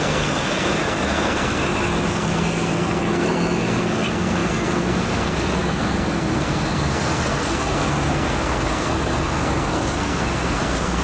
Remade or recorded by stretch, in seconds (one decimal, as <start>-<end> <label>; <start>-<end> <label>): 0.0-1.6 remade; 1.6-2.1 recorded; 2.1-11.0 remade